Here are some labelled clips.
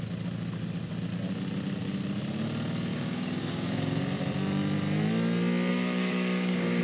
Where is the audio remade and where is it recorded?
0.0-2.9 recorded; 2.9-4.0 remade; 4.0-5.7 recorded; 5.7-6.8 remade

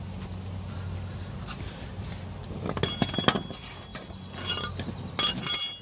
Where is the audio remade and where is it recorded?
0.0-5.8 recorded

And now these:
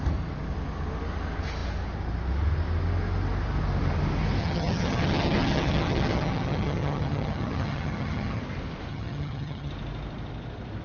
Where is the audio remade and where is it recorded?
0.0-4.4 recorded; 4.4-8.4 remade; 8.4-8.9 recorded; 8.9-9.7 remade; 9.7-10.8 recorded

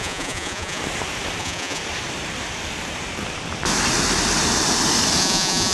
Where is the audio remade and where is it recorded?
0.0-0.8 remade; 0.8-1.4 recorded; 1.4-1.8 remade; 1.8-5.2 recorded; 5.2-5.7 remade

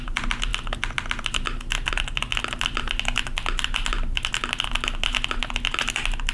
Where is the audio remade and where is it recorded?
0.0-6.3 recorded